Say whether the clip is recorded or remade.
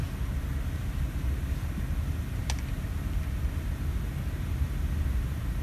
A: recorded